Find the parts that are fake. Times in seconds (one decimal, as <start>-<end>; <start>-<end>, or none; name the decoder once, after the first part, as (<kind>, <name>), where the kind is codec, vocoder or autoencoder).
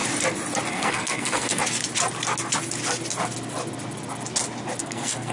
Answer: 0.7-1.6 (codec, SNAC); 4.8-5.3